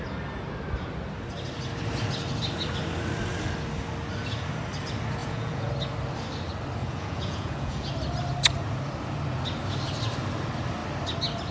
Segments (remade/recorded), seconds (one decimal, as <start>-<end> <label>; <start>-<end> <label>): 0.0-5.2 recorded; 5.2-5.7 remade; 5.7-6.8 recorded; 6.8-7.9 remade; 7.9-11.5 recorded